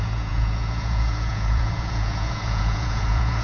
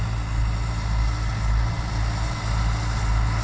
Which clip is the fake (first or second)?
first